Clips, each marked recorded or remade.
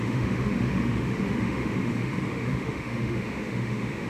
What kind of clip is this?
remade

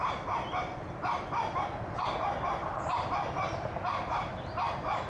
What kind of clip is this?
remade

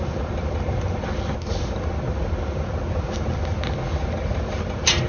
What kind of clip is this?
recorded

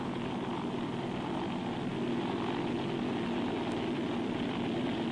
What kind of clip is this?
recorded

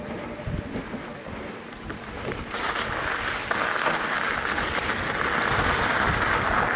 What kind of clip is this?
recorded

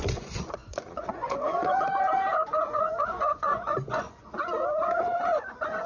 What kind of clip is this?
remade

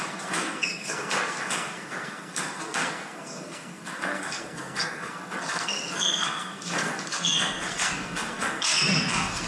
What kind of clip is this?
remade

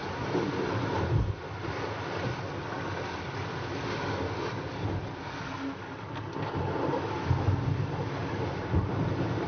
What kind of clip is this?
recorded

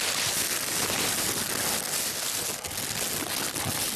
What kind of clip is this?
recorded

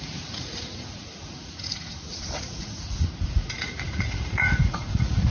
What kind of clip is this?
remade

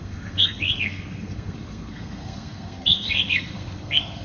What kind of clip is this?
remade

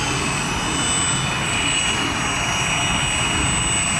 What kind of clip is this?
recorded